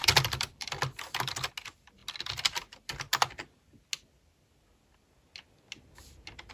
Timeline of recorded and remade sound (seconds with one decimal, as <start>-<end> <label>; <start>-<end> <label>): 0.0-1.5 remade; 1.5-6.5 recorded